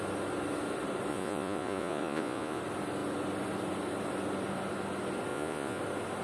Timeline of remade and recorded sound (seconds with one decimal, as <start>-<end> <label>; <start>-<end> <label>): 0.0-1.1 recorded; 1.1-2.6 remade; 2.6-5.3 recorded; 5.3-5.8 remade; 5.8-6.2 recorded